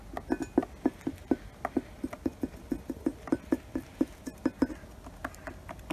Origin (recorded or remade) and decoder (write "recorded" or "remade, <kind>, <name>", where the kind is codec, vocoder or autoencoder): recorded